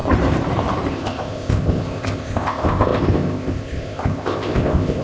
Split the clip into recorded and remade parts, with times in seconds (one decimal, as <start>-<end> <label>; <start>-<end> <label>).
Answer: 0.0-0.9 recorded; 0.9-5.0 remade